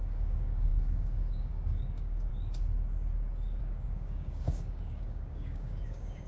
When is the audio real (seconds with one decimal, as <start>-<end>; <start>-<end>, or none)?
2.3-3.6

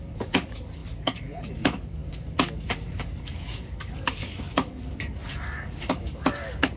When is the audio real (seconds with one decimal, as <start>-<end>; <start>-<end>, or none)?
none

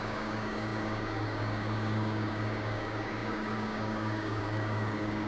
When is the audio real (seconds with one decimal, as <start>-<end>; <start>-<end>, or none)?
none

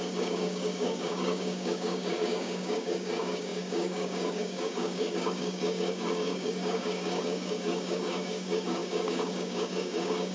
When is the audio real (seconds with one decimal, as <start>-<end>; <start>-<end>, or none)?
none